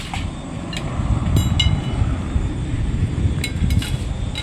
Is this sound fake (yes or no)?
no